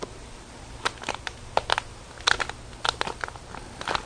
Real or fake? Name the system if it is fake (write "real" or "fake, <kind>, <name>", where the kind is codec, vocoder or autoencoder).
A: real